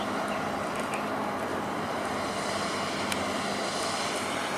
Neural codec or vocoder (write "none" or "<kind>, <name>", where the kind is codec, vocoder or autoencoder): none